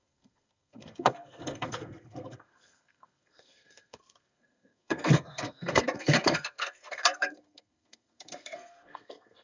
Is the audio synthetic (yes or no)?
yes